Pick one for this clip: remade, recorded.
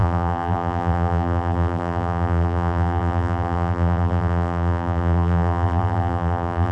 remade